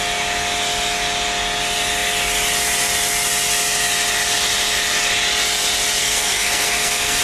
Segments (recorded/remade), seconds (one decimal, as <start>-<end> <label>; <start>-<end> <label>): 0.0-6.0 recorded; 6.0-7.2 remade